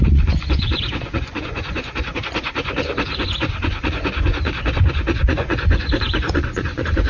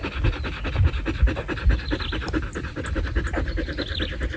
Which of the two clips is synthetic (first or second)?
first